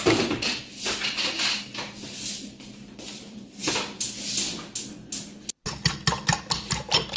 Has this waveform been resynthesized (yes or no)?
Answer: no